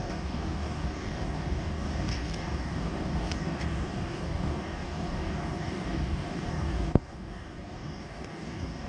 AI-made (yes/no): yes